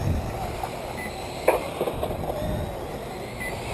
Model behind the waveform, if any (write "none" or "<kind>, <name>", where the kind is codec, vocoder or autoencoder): none